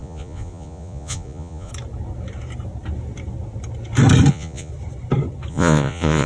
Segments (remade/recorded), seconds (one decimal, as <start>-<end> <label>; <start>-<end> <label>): 0.0-1.7 remade; 1.7-4.3 recorded; 4.3-4.7 remade; 4.7-5.5 recorded; 5.5-6.3 remade